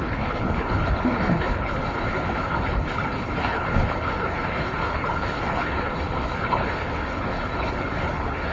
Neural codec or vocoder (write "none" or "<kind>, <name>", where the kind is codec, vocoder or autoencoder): codec, HILCodec